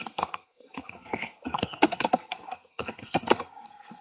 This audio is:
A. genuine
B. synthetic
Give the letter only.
B